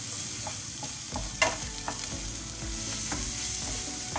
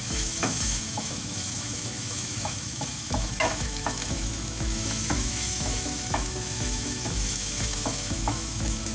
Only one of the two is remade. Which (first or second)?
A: second